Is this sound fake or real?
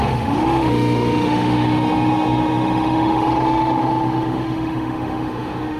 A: fake